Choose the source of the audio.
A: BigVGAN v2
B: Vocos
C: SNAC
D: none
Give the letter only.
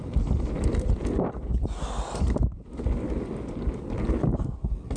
D